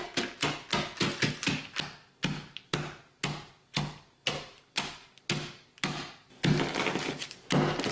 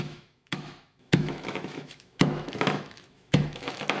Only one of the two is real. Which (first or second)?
first